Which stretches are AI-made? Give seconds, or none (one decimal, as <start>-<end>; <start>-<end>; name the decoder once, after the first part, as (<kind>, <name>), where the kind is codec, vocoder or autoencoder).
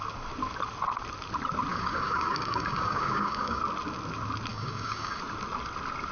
1.7-3.6 (codec, DAC); 4.5-5.2